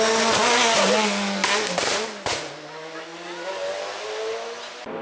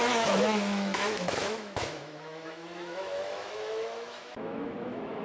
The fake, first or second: second